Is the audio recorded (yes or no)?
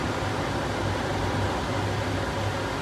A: yes